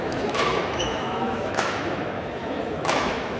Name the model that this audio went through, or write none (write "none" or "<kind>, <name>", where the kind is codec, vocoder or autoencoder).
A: autoencoder, DAC-VAE